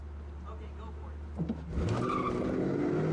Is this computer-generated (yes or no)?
no